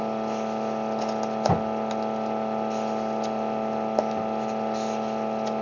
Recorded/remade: recorded